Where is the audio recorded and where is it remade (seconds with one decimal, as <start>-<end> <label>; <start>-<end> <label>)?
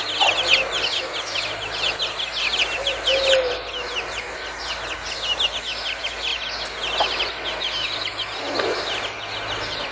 0.0-9.9 recorded